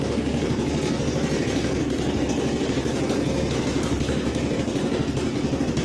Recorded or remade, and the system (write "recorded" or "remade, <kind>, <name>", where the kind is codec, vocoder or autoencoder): remade, codec, SNAC